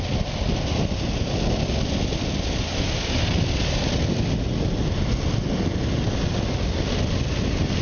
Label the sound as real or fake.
real